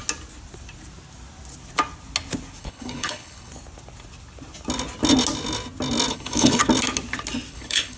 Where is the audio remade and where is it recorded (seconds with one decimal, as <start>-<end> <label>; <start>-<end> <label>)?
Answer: 0.0-2.6 recorded; 2.6-3.5 remade; 3.5-6.1 recorded; 6.1-6.6 remade; 6.6-7.5 recorded; 7.5-8.0 remade